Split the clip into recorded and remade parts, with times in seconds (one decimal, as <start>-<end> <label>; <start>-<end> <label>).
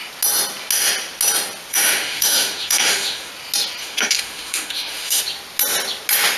0.0-1.7 recorded; 1.7-3.3 remade; 3.3-3.8 recorded; 3.8-5.2 remade; 5.2-6.4 recorded